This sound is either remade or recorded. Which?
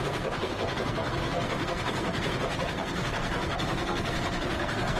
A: remade